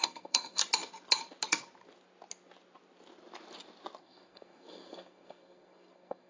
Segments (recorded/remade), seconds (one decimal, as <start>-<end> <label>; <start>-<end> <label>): 0.0-0.6 remade; 0.6-4.0 recorded; 4.0-6.3 remade